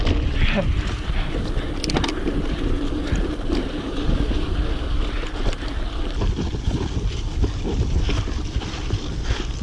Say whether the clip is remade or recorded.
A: recorded